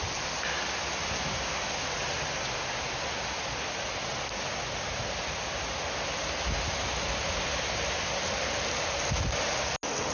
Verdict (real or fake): real